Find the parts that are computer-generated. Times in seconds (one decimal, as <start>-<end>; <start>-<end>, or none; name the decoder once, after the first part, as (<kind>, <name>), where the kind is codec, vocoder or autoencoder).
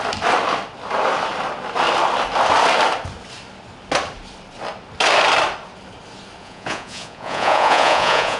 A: 6.4-8.4 (vocoder, Vocos)